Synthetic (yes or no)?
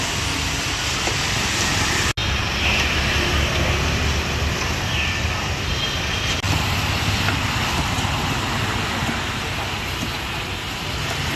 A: no